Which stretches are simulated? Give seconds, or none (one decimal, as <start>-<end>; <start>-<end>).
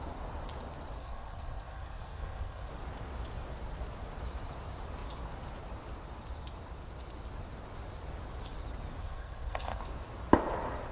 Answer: 1.0-2.7; 9.0-9.8